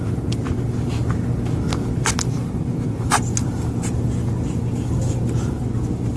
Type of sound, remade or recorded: recorded